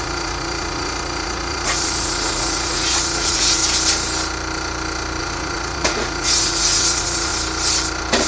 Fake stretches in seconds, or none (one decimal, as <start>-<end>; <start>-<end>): 0.0-3.6; 5.2-7.3